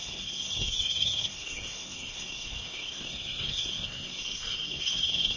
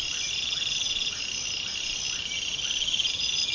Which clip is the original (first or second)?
second